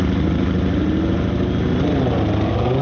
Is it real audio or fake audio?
real